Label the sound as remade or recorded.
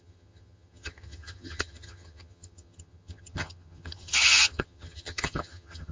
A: remade